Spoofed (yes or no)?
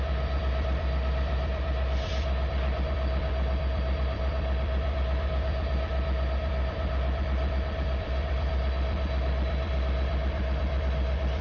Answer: yes